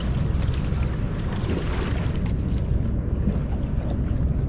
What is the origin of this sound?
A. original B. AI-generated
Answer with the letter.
A